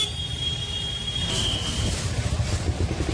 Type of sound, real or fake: real